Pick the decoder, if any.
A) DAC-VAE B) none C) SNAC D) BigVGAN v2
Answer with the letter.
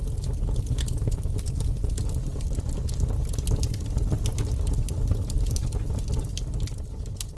B